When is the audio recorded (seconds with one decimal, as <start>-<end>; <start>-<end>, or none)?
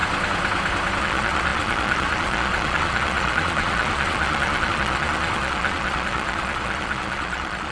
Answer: 0.0-1.0